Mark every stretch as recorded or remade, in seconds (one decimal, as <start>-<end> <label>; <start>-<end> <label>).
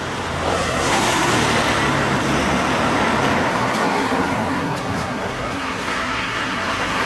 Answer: 0.0-0.5 recorded; 0.5-1.3 remade; 1.3-3.5 recorded; 3.5-7.1 remade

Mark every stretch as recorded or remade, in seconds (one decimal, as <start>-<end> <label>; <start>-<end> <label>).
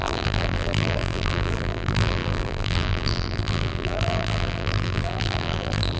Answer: 0.0-6.0 remade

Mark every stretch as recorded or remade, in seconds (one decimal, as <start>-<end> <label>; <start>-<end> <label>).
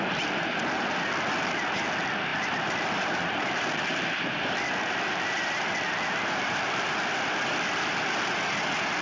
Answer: 0.0-2.3 recorded; 2.3-7.1 remade; 7.1-9.0 recorded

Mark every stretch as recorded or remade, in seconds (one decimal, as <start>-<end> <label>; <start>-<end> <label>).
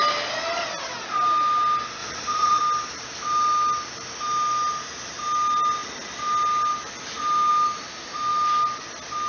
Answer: 0.0-2.0 recorded; 2.0-2.6 remade; 2.6-9.3 recorded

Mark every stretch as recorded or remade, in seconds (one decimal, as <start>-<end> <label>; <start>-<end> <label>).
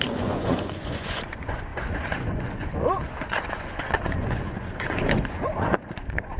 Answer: 0.0-6.4 remade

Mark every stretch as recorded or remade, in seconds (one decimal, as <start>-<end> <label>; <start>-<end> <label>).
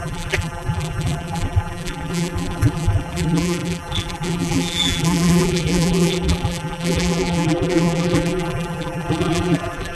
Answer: 0.0-9.9 remade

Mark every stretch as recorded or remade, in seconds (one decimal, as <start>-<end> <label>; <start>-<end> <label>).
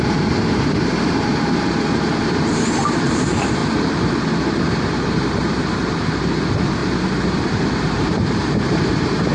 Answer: 0.0-3.6 remade; 3.6-4.4 recorded; 4.4-9.3 remade